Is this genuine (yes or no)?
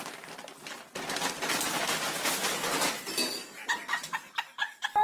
yes